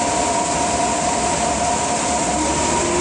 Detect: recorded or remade recorded